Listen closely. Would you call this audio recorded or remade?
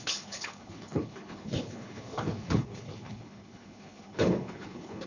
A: remade